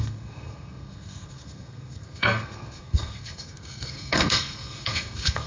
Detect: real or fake fake